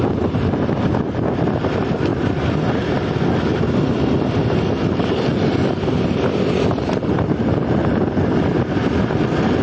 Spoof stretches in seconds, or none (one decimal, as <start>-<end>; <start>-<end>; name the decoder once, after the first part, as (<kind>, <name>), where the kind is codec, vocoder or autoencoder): none